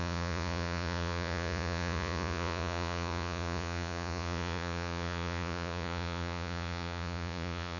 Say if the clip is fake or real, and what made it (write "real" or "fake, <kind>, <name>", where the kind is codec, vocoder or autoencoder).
fake, vocoder, Vocos